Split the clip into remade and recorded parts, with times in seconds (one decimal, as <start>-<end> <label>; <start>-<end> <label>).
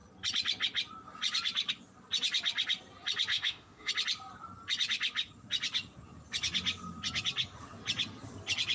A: 0.0-3.3 recorded; 3.3-3.9 remade; 3.9-8.7 recorded